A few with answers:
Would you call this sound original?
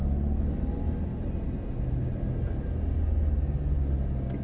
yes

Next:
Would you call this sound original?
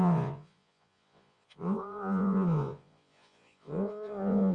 no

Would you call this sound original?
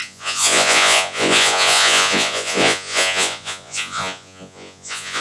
no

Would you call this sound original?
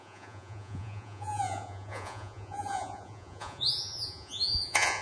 no